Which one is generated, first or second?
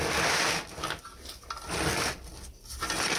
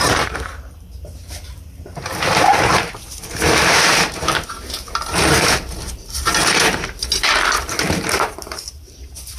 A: second